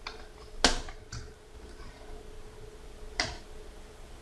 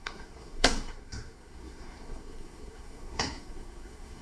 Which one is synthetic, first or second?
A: second